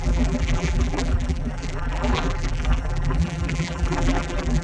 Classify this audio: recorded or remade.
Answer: remade